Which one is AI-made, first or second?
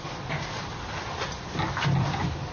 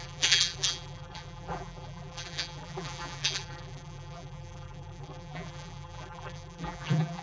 second